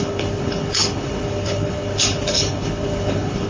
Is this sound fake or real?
fake